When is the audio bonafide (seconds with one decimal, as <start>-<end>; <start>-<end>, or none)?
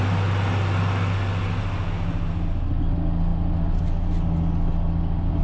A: 0.0-5.4